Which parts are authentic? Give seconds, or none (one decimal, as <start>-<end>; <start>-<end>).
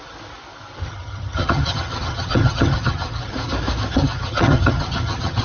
0.0-0.8; 3.3-3.9